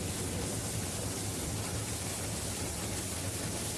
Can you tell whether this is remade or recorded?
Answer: recorded